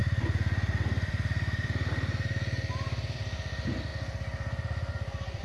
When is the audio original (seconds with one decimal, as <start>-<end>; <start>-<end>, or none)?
3.2-3.9